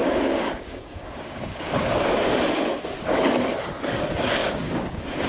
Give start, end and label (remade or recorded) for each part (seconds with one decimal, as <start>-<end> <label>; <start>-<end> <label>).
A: 0.0-2.6 remade; 2.6-4.4 recorded; 4.4-5.3 remade

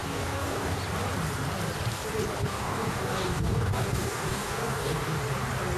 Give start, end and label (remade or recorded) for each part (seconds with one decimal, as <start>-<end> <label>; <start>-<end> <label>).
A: 0.0-0.8 remade; 0.8-2.4 recorded; 2.4-5.2 remade; 5.2-5.8 recorded

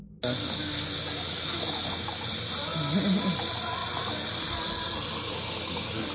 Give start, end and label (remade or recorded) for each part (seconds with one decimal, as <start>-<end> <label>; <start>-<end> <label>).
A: 0.0-0.4 recorded; 0.4-2.3 remade; 2.3-6.1 recorded

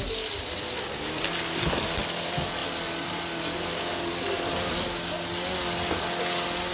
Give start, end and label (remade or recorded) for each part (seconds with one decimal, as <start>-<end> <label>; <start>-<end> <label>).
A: 0.0-6.7 recorded

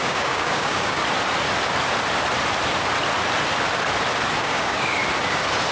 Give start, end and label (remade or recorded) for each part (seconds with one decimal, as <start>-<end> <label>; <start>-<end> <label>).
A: 0.0-1.0 remade; 1.0-4.4 recorded; 4.4-5.0 remade; 5.0-5.7 recorded

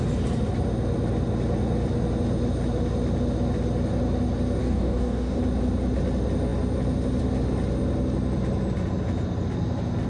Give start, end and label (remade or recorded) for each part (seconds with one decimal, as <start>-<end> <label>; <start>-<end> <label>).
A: 0.0-4.6 recorded; 4.6-5.4 remade; 5.4-10.1 recorded

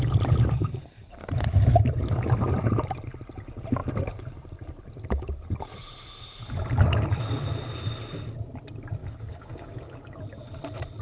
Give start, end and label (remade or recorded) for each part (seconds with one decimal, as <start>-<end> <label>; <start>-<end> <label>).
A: 0.0-9.0 recorded; 9.0-10.2 remade; 10.2-11.0 recorded